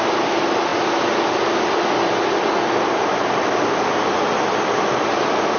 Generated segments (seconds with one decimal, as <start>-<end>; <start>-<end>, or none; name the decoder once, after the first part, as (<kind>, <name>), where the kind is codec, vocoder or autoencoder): none